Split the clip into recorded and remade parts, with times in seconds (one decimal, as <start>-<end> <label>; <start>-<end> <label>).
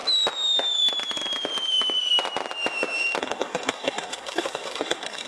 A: 0.0-3.2 recorded; 3.2-5.3 remade